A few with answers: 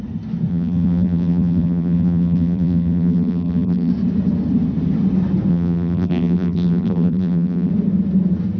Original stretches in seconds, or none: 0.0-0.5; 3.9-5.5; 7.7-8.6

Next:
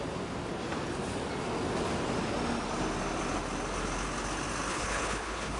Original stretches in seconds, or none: 0.0-4.7

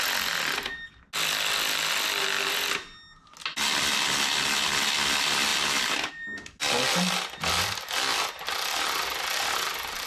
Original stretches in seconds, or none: 0.0-10.1

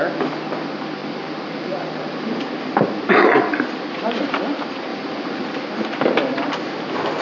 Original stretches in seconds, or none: 0.0-1.0; 2.4-4.9; 5.4-7.2